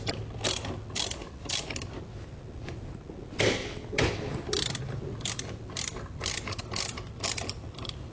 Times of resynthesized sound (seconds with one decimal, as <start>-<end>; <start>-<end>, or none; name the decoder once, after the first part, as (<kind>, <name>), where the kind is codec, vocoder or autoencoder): none